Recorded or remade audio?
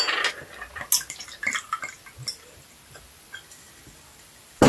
recorded